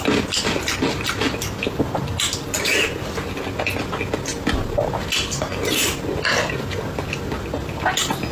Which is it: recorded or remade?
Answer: recorded